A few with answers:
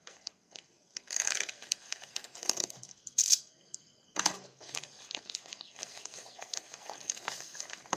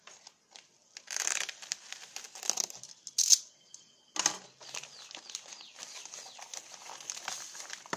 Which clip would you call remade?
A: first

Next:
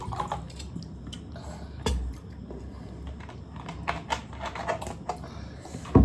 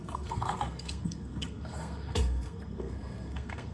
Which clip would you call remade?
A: second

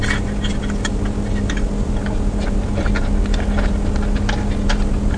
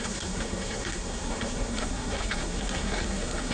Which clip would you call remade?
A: second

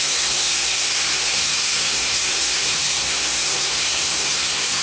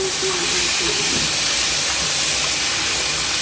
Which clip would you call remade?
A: first